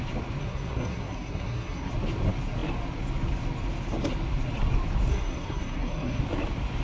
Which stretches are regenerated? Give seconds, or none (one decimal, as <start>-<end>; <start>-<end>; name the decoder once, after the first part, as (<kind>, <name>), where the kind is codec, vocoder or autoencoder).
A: 0.4-1.9 (codec, SNAC); 5.1-6.2